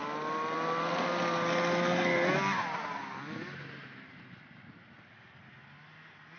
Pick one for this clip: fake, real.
real